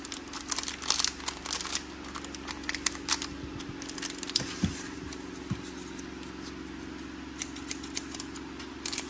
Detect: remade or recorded recorded